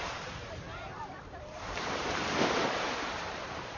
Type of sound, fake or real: fake